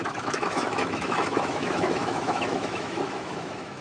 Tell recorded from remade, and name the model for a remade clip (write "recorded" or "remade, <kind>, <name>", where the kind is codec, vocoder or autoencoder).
remade, autoencoder, DAC-VAE